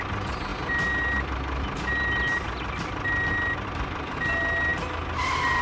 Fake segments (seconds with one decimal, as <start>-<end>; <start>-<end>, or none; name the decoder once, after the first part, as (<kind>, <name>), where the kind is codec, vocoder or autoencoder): none